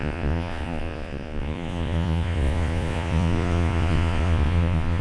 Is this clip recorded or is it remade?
remade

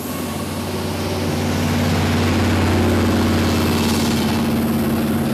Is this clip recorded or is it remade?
recorded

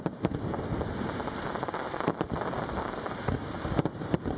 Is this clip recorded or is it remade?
recorded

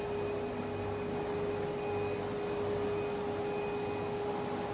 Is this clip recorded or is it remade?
recorded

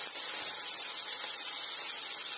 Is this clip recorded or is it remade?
recorded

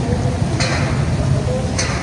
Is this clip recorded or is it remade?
recorded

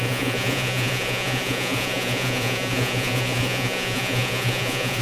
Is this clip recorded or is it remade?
remade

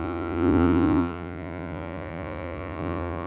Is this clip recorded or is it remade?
remade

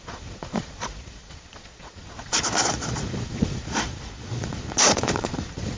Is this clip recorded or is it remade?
remade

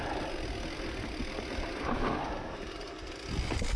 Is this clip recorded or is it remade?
recorded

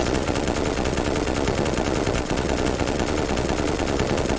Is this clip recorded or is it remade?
remade